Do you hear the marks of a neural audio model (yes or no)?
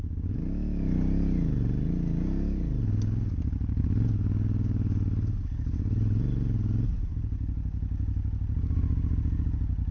no